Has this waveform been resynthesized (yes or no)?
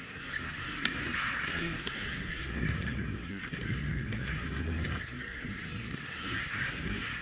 yes